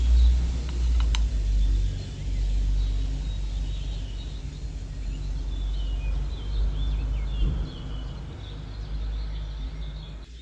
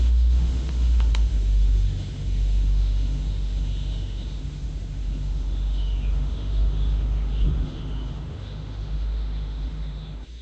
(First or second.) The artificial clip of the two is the second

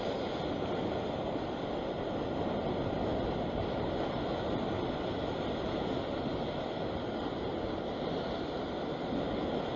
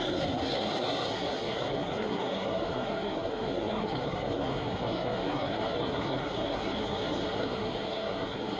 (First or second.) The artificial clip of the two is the second